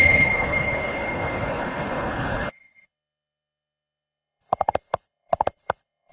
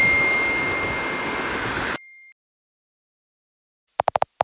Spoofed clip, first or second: first